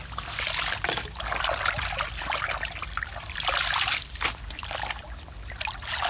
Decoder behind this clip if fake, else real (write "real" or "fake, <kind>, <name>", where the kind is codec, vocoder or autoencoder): real